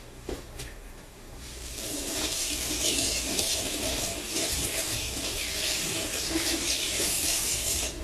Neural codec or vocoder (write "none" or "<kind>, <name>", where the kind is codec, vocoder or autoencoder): codec, DAC